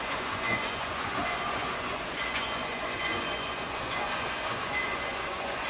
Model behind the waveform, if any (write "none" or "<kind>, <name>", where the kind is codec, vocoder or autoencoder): vocoder, Vocos